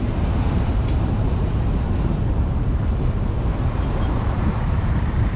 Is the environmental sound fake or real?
fake